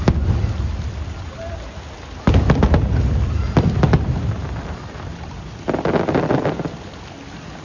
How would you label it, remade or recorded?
recorded